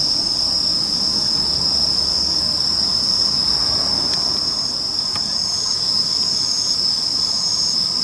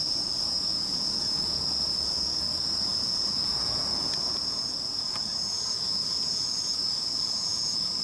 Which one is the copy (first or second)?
second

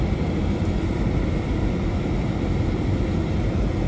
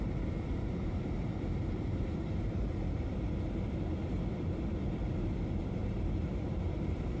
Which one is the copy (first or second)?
second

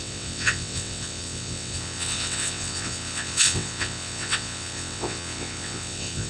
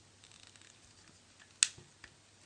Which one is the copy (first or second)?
first